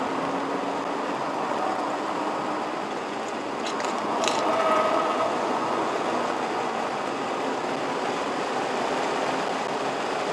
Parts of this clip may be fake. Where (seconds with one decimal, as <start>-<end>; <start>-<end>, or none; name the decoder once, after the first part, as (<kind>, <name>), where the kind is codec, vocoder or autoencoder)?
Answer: 1.2-2.1 (vocoder, Vocos); 2.8-7.2